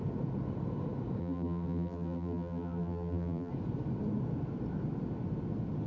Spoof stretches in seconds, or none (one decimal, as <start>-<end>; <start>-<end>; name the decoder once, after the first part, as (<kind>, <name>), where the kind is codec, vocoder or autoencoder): 1.2-3.5 (vocoder, BigVGAN v2)